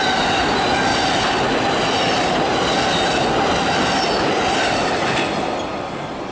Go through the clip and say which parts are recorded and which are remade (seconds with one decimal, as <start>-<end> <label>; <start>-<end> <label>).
0.0-0.9 recorded; 0.9-2.3 remade; 2.3-2.9 recorded; 2.9-3.6 remade; 3.6-6.3 recorded